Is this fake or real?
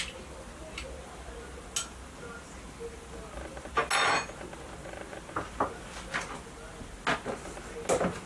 real